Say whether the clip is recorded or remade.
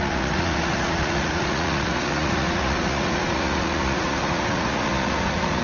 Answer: remade